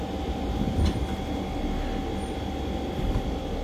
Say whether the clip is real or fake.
real